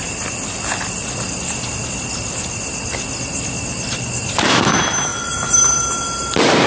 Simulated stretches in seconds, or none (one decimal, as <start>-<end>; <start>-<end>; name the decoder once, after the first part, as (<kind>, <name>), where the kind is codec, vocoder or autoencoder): none

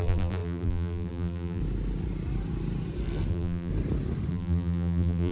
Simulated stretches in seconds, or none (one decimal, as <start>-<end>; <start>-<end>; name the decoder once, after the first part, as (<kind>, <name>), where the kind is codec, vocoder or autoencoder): 0.0-1.6 (vocoder, BigVGAN v2); 3.3-3.7; 4.3-5.3

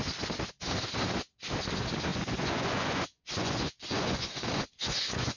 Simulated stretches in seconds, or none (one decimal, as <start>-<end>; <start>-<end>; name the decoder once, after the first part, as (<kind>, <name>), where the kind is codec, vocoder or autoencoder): 2.1-5.4 (vocoder, Vocos)

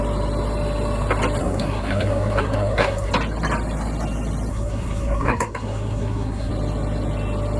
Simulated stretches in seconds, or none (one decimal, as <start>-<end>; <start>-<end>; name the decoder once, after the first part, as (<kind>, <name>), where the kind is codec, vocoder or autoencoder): 1.4-3.1 (codec, SNAC); 4.5-6.5

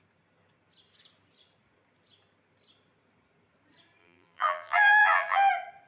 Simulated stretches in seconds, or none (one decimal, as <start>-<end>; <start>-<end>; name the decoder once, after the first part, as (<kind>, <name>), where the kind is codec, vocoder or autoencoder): 4.0-5.5 (vocoder, BigVGAN v2)

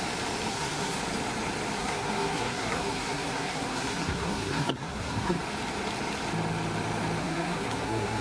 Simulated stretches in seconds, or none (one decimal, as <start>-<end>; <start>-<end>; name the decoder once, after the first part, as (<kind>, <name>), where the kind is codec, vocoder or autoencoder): 0.5-1.0 (codec, SNAC); 1.8-5.4; 7.2-8.2